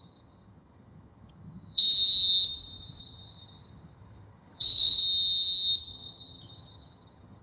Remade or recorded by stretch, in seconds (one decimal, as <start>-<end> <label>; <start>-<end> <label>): 0.0-1.8 remade; 1.8-3.0 recorded; 3.0-5.0 remade; 5.0-5.9 recorded; 5.9-7.4 remade